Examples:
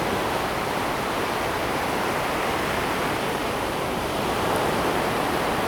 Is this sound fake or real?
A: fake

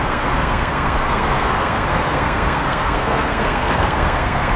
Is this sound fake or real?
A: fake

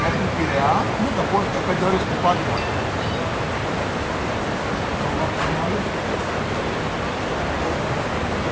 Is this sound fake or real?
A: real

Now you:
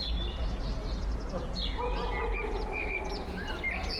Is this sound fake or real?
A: real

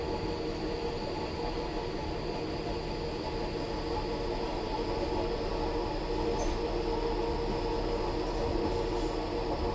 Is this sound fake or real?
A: real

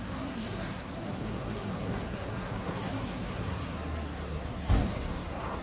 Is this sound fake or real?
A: fake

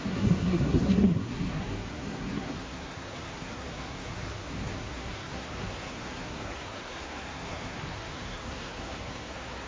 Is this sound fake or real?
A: fake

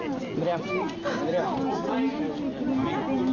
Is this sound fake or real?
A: real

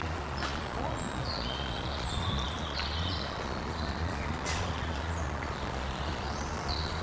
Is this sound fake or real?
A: fake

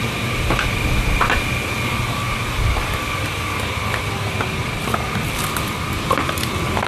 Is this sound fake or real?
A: real